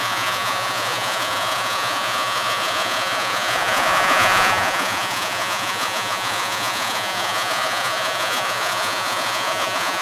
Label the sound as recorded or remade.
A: remade